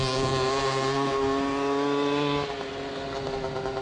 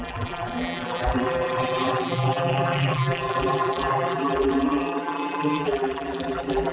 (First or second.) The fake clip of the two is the second